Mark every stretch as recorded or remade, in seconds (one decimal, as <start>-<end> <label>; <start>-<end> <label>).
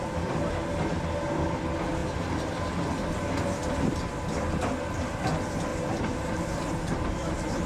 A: 0.0-5.7 recorded; 5.7-7.7 remade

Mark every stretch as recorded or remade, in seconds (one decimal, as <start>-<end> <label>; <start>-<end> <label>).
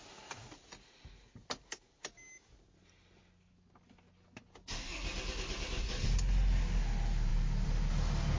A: 0.0-7.3 recorded; 7.3-7.9 remade; 7.9-8.4 recorded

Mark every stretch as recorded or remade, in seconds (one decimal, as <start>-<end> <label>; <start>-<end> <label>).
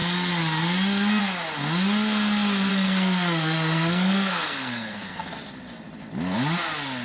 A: 0.0-2.7 recorded; 2.7-5.3 remade; 5.3-7.0 recorded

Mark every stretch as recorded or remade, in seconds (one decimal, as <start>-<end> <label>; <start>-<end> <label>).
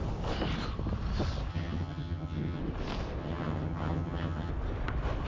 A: 0.0-1.5 recorded; 1.5-2.6 remade; 2.6-3.2 recorded; 3.2-4.5 remade; 4.5-5.3 recorded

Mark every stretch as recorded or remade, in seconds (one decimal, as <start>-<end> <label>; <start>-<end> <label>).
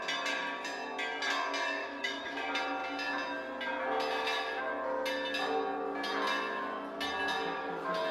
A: 0.0-1.8 recorded; 1.8-2.4 remade; 2.4-8.1 recorded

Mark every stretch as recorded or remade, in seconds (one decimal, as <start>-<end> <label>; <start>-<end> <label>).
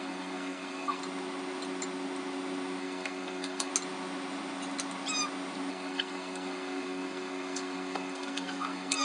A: 0.0-1.0 remade; 1.0-2.8 recorded; 2.8-3.7 remade; 3.7-5.7 recorded; 5.7-9.0 remade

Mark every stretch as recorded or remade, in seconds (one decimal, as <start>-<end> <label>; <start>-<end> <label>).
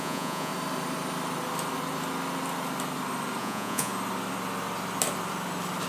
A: 0.0-0.5 remade; 0.5-3.4 recorded; 3.4-3.9 remade; 3.9-5.9 recorded